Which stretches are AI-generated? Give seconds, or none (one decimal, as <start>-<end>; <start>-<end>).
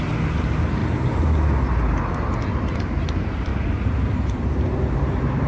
0.0-0.8; 3.0-5.5